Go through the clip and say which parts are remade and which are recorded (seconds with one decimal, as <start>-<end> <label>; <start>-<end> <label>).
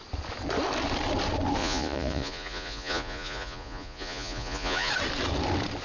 0.0-1.6 recorded; 1.6-4.9 remade; 4.9-5.8 recorded